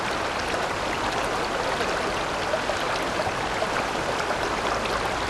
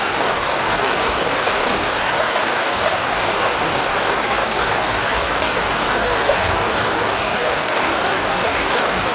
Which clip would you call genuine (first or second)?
first